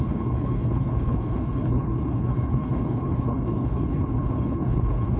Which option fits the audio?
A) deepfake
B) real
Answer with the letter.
A